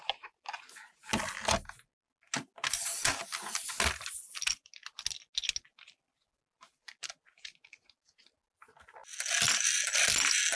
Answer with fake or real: real